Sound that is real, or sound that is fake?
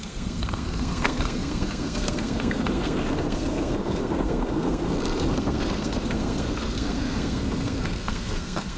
fake